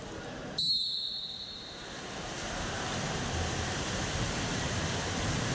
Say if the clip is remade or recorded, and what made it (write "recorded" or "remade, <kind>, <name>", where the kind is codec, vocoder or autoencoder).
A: recorded